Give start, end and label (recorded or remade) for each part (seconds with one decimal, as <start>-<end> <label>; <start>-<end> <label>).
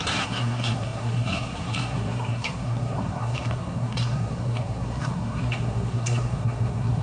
0.0-7.0 remade